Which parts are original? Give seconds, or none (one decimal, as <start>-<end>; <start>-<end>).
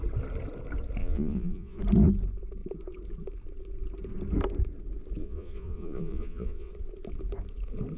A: 0.0-1.0; 1.8-5.2; 6.7-8.0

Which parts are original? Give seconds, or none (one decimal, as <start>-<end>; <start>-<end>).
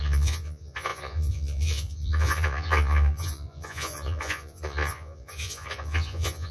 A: none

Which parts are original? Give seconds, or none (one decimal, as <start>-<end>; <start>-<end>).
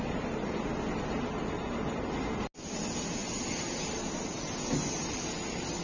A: 0.0-5.8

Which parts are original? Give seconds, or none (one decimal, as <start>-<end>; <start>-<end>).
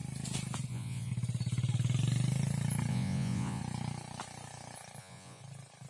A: 0.0-0.7; 1.1-2.9; 3.6-5.0; 5.4-5.9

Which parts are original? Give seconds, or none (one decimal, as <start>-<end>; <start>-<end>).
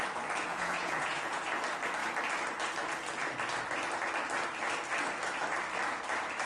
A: 0.0-0.5; 1.4-6.5